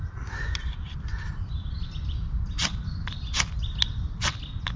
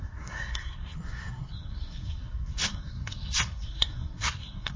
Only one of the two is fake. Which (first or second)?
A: second